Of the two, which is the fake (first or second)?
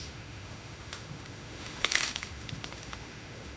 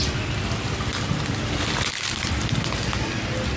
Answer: first